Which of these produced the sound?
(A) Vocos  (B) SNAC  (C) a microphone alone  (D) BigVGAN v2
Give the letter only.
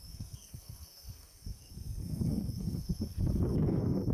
B